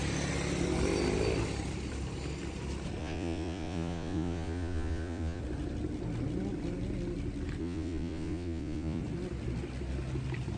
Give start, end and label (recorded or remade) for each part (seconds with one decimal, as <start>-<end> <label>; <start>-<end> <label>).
0.0-3.0 recorded; 3.0-5.4 remade; 5.4-7.6 recorded; 7.6-9.0 remade; 9.0-10.6 recorded